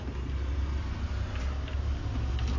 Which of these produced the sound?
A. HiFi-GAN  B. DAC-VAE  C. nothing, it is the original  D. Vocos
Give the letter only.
C